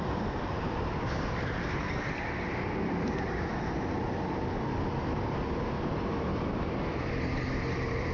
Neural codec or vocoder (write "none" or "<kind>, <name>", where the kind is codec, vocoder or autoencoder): none